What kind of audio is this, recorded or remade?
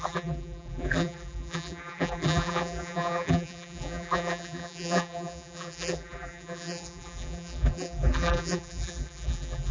remade